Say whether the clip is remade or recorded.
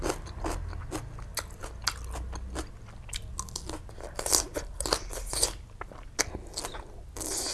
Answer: recorded